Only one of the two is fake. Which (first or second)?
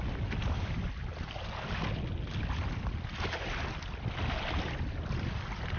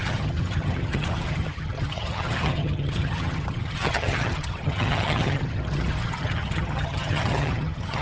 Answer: second